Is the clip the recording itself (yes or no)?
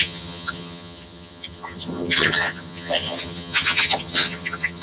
no